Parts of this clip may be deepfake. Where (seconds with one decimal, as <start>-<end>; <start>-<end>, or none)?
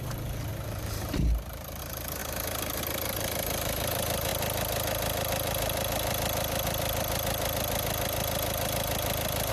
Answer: 0.0-4.3